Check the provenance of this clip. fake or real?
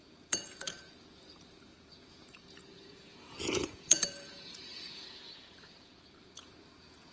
fake